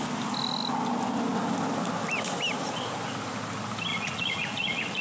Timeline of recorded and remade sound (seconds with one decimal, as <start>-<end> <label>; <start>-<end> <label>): 0.0-3.9 recorded; 3.9-5.0 remade